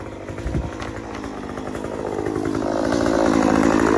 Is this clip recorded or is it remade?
recorded